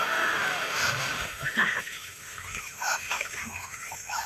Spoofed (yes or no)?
yes